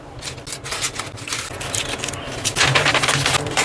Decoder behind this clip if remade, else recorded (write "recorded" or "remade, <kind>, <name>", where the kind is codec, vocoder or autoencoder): recorded